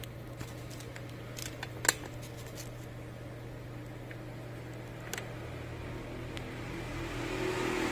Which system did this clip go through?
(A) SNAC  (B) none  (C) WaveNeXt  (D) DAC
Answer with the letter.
B